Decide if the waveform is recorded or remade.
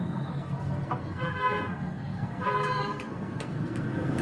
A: remade